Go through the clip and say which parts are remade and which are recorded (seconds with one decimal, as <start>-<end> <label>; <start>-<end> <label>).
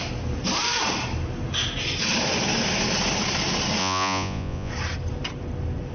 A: 0.0-3.8 recorded; 3.8-4.7 remade; 4.7-5.9 recorded